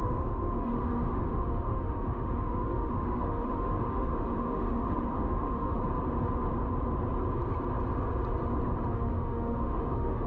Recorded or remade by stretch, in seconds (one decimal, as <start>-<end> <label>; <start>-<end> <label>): 0.0-5.8 remade; 5.8-8.9 recorded; 8.9-10.3 remade

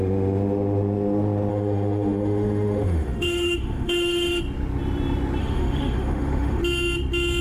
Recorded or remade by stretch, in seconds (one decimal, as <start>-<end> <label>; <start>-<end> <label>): 0.0-1.5 recorded; 1.5-4.4 remade; 4.4-5.4 recorded; 5.4-6.6 remade; 6.6-7.4 recorded

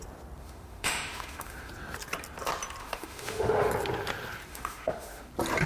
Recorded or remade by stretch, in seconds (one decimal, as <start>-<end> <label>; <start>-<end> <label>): 0.0-0.4 recorded; 0.4-1.7 remade; 1.7-2.8 recorded; 2.8-3.7 remade; 3.7-4.5 recorded; 4.5-5.3 remade; 5.3-5.7 recorded

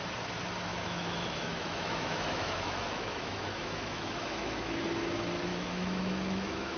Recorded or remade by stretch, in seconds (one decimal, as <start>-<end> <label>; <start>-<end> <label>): 0.0-0.7 recorded; 0.7-4.8 remade; 4.8-5.5 recorded; 5.5-6.8 remade

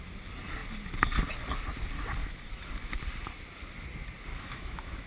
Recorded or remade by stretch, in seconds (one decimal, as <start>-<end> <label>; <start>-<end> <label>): 0.0-2.2 recorded; 2.2-2.7 remade; 2.7-4.3 recorded; 4.3-5.1 remade

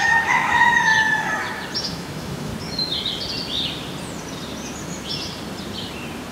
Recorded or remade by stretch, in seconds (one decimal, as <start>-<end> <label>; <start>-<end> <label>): 0.0-0.9 remade; 0.9-1.8 recorded; 1.8-2.5 remade; 2.5-6.3 recorded

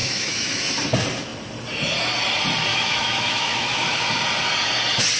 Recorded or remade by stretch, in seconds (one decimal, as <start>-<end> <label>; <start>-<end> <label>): 0.0-0.6 remade; 0.6-2.7 recorded; 2.7-4.0 remade; 4.0-5.2 recorded

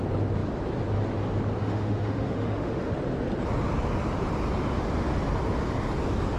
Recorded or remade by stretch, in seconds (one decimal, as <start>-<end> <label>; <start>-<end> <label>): 0.0-1.6 recorded; 1.6-2.9 remade; 2.9-6.4 recorded